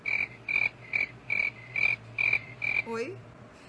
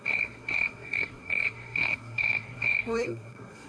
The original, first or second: first